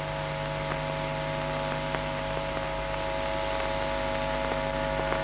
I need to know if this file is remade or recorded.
recorded